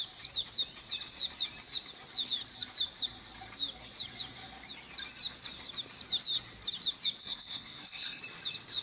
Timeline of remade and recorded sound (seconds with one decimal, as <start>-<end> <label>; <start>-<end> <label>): 0.0-7.2 recorded; 7.2-8.2 remade; 8.2-8.8 recorded